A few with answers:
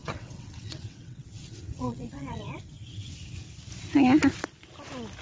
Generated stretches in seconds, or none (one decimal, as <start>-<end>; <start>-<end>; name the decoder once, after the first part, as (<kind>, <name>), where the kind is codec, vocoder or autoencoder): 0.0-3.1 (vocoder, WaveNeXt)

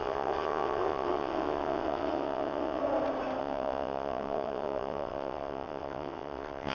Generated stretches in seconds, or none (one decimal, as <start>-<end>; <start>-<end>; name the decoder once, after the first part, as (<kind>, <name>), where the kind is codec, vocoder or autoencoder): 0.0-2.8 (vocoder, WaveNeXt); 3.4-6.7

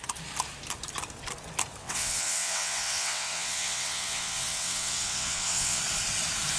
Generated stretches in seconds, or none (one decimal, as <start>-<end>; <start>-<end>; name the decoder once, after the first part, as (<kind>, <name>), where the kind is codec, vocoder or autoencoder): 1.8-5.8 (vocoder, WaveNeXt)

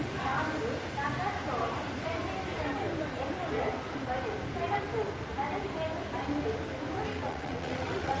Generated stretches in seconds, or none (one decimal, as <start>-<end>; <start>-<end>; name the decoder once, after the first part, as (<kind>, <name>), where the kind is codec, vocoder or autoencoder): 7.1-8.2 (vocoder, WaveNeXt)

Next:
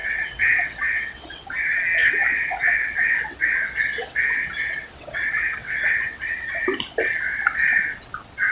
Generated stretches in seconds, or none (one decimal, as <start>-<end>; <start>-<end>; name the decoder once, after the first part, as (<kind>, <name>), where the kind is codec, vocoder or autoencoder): 0.0-1.4 (vocoder, WaveNeXt); 2.0-6.2